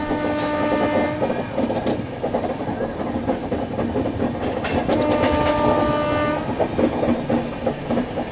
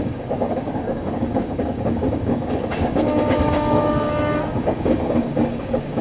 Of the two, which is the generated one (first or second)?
second